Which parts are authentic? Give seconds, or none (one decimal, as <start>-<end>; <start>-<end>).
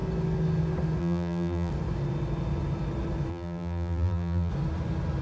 0.0-1.0; 1.7-3.3; 4.5-5.2